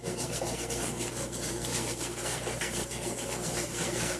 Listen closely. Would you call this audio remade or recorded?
remade